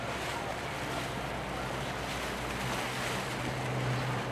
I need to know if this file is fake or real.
real